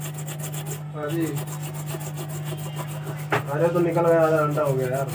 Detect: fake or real real